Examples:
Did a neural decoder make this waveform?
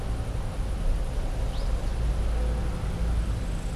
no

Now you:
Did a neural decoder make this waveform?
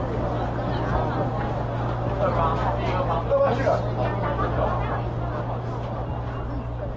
no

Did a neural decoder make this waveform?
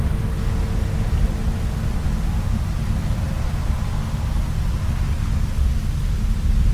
no